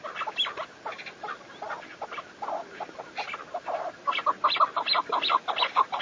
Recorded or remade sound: recorded